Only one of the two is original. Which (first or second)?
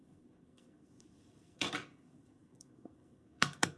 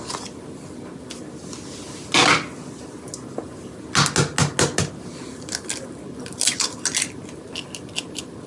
second